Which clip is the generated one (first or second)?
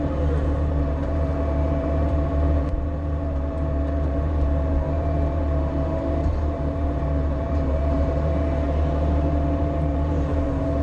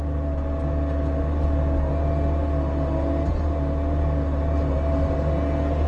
first